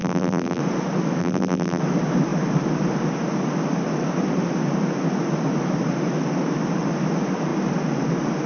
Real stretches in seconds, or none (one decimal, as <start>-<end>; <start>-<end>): 0.6-1.2; 1.8-8.5